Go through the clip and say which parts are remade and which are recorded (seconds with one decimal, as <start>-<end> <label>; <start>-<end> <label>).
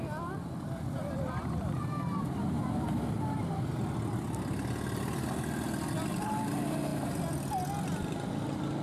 0.0-3.4 remade; 3.4-8.8 recorded